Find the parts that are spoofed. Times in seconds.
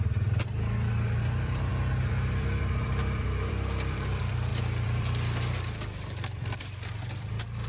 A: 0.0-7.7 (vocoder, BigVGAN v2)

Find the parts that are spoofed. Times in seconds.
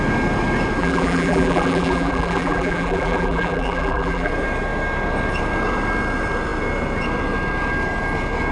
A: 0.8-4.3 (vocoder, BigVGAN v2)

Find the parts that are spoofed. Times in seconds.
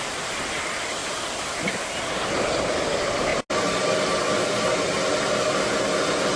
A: 1.0-2.0 (vocoder, BigVGAN v2)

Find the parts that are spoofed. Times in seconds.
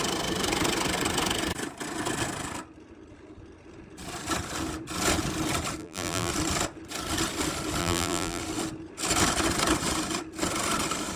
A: 5.8-6.3 (vocoder, BigVGAN v2); 7.8-8.4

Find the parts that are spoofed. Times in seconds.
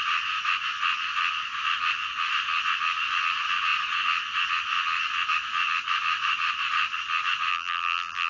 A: 7.5-8.3 (vocoder, BigVGAN v2)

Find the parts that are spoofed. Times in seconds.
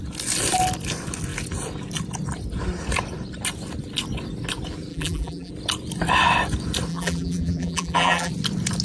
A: 4.9-5.5 (vocoder, BigVGAN v2); 6.9-8.3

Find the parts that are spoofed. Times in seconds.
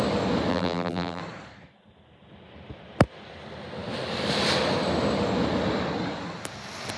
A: 0.5-1.2 (vocoder, BigVGAN v2)